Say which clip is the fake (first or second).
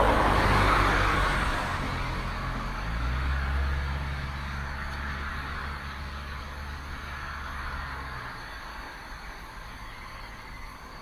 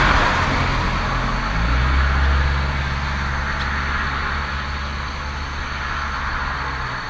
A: first